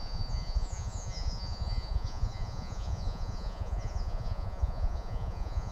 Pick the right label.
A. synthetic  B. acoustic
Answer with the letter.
A